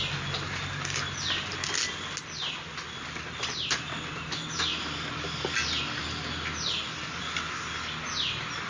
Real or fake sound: real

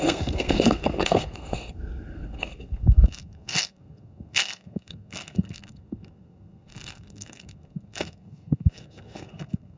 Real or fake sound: fake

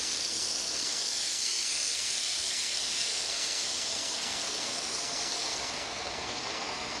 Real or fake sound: fake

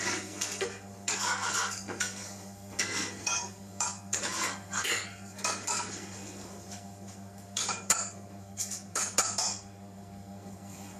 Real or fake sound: fake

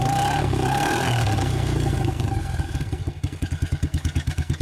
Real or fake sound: fake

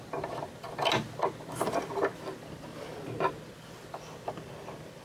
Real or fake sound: real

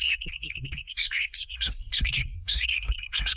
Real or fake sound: fake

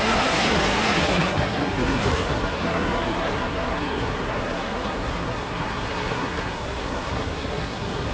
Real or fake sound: fake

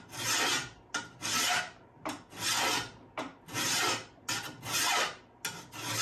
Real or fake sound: real